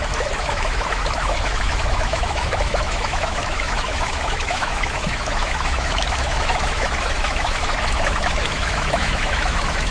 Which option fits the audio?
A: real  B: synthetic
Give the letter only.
B